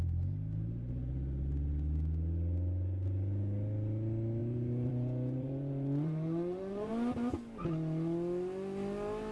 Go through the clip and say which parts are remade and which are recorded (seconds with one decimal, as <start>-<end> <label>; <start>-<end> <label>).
0.0-4.4 recorded; 4.4-6.9 remade; 6.9-9.3 recorded